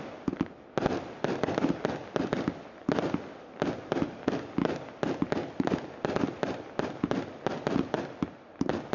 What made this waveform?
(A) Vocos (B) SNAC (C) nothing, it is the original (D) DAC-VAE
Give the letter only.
C